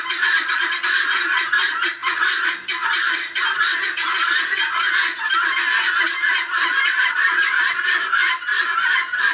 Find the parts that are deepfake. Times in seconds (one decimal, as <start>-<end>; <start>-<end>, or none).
none

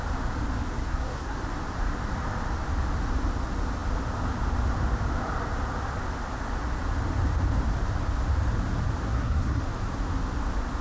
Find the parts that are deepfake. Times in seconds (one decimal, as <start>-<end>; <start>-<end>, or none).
0.7-1.4; 9.0-9.6

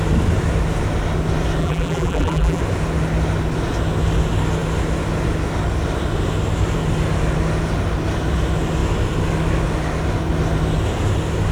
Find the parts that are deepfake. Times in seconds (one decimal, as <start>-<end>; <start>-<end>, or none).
1.6-2.6

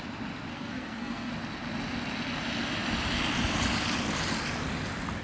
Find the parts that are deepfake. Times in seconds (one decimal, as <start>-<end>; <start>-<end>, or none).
0.5-1.3

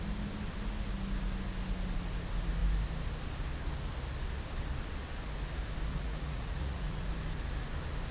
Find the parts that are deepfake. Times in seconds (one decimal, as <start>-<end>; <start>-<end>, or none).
5.9-7.1

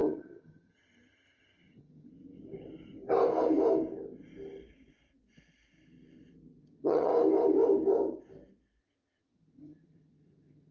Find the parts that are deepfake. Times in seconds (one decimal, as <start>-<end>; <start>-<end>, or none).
0.0-2.1; 6.6-7.1; 8.8-10.7

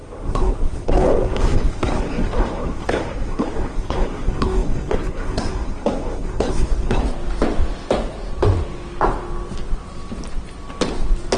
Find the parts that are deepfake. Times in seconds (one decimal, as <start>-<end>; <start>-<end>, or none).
0.0-7.0

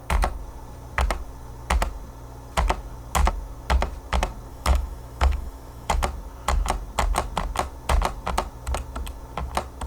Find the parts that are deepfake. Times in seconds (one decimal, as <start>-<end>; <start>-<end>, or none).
4.5-6.0